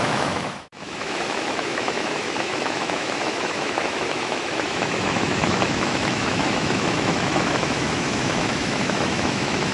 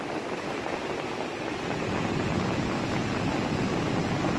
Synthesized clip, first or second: first